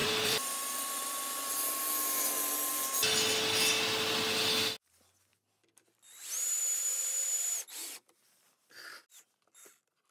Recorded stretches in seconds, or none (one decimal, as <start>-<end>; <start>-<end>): 1.7-5.3; 9.0-10.1